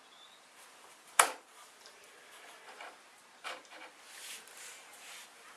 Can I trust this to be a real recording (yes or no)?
yes